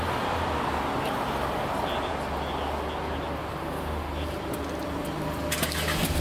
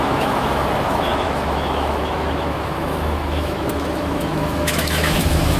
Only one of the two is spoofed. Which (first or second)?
second